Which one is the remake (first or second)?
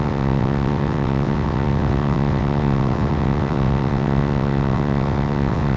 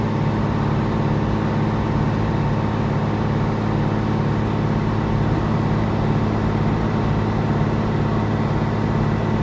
first